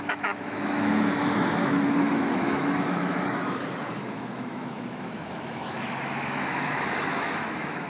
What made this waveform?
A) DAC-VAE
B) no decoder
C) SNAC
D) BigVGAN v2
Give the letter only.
A